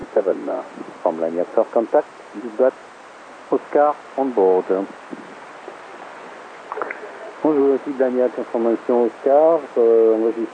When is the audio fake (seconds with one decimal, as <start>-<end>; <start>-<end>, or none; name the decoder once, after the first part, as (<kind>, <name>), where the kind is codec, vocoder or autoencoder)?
0.0-0.7 (vocoder, Vocos); 5.9-7.6